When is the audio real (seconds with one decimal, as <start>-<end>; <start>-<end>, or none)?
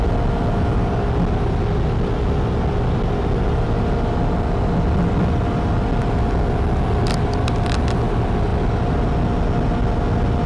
0.0-10.5